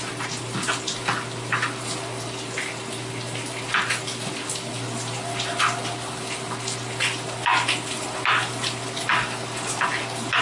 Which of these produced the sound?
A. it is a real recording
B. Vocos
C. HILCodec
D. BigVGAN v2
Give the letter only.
A